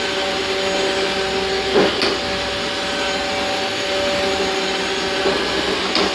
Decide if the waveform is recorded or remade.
recorded